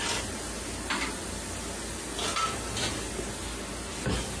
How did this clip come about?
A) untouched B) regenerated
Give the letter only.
A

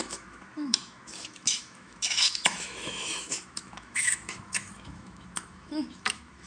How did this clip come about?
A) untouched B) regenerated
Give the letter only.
B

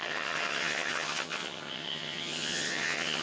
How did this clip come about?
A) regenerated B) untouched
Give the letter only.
A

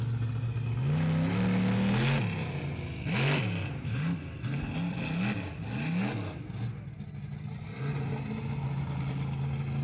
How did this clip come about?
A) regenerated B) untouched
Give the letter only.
B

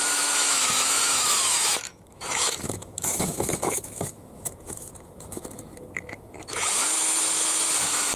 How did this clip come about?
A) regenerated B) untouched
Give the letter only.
A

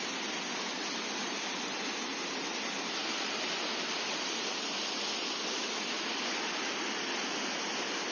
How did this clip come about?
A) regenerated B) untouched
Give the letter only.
B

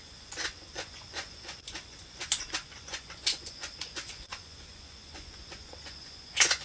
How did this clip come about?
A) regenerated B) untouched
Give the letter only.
A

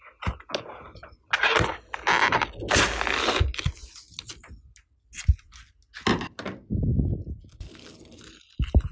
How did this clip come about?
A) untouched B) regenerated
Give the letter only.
A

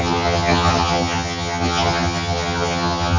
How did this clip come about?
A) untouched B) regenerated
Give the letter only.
B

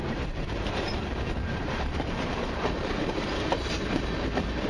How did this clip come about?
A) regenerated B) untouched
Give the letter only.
A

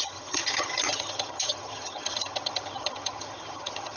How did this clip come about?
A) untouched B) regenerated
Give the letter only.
B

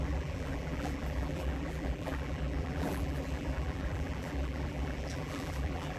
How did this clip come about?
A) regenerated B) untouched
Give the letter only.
A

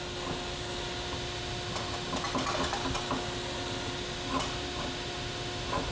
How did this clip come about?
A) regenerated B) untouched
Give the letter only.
B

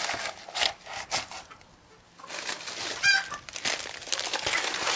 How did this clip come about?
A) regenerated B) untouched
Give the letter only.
B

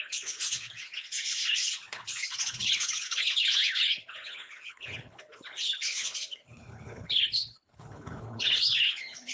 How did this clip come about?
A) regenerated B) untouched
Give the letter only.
A